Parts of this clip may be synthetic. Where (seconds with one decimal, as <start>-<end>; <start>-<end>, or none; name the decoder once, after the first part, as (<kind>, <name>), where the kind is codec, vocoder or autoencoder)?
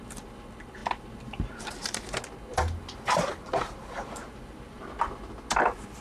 2.5-4.8 (vocoder, BigVGAN v2)